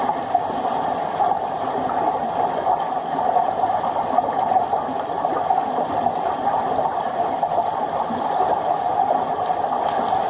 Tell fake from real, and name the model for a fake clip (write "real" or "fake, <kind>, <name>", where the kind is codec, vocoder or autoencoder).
real